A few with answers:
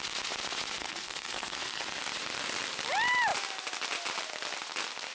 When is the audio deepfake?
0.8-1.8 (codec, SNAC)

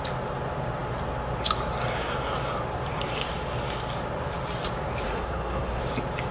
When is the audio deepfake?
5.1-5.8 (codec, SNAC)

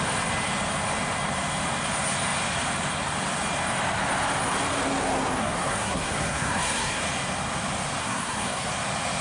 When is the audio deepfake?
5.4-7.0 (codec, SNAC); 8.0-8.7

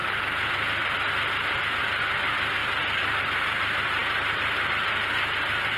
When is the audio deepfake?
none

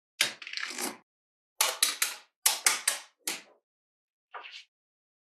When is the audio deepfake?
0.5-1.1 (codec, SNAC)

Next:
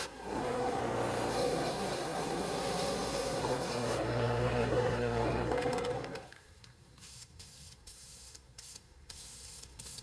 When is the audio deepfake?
0.0-0.8 (codec, SNAC); 1.3-10.0

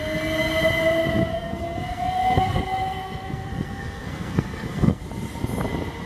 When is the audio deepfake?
1.3-5.0 (codec, SNAC)